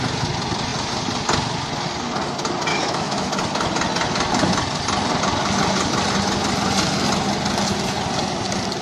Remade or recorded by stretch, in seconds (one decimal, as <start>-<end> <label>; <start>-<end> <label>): 0.0-2.7 recorded; 2.7-3.3 remade; 3.3-8.8 recorded